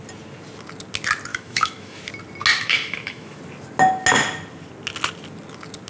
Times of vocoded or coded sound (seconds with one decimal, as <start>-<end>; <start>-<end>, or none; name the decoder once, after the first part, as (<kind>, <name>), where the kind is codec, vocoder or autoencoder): 1.3-2.0 (autoencoder, DAC-VAE); 2.5-3.4